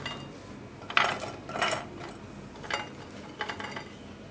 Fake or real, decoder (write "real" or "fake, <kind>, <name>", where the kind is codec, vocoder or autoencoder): real